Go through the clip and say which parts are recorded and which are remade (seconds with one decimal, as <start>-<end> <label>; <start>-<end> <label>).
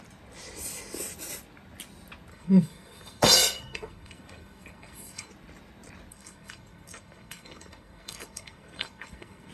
0.0-2.3 recorded; 2.3-5.3 remade; 5.3-6.1 recorded; 6.1-9.5 remade